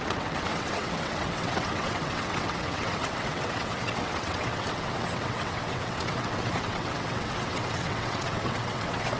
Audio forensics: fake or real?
fake